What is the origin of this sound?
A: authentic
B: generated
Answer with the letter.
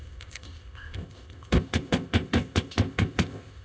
B